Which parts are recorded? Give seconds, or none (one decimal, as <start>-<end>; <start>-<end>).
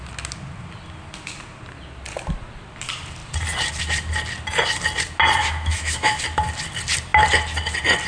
0.0-5.4; 6.2-8.1